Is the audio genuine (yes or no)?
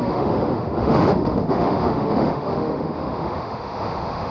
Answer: no